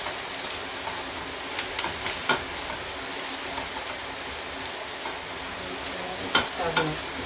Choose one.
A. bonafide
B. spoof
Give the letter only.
A